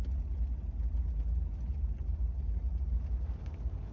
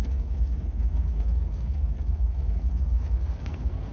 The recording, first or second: first